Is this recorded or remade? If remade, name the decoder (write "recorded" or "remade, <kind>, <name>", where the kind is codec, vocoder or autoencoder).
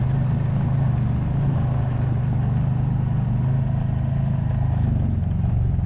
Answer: recorded